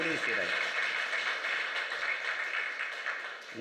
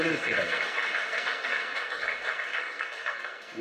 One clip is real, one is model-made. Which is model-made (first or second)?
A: second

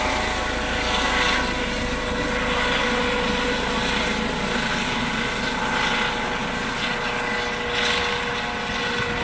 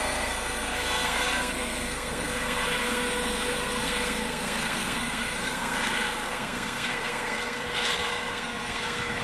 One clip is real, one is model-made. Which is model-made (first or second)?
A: second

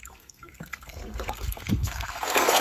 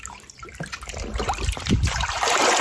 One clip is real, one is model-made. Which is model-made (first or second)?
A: first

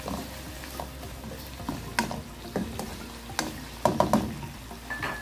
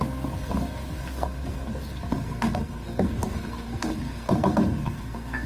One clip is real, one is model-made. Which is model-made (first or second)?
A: second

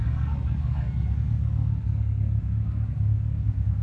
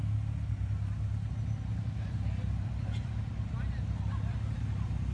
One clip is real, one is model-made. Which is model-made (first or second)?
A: first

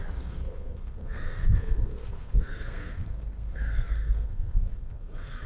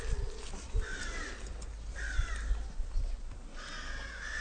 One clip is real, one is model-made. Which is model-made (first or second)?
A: first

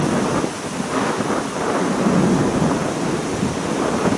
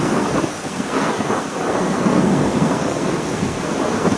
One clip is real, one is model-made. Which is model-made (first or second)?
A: second